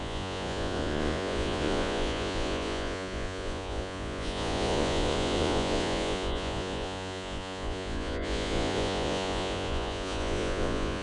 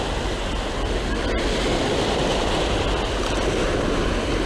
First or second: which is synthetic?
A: first